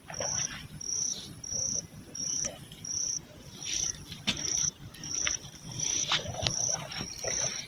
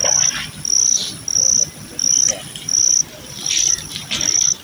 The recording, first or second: second